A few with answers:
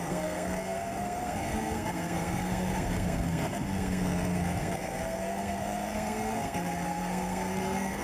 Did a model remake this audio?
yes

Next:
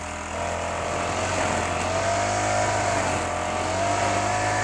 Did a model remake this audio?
no